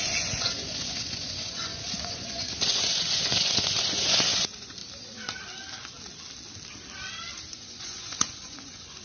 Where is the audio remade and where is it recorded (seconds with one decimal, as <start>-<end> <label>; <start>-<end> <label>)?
0.0-4.8 remade; 4.8-7.5 recorded; 7.5-9.0 remade